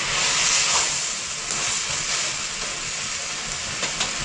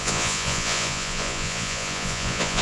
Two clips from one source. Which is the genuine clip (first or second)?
first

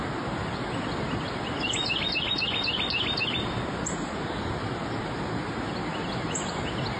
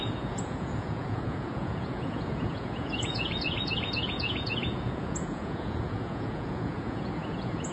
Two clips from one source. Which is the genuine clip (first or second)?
first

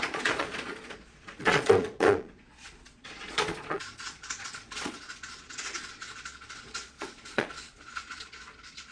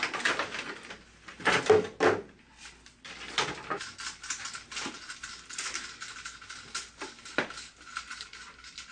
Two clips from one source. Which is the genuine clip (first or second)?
second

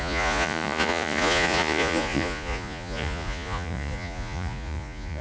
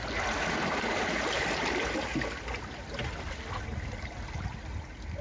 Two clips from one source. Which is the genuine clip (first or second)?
second